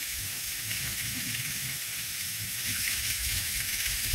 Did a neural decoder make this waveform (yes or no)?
yes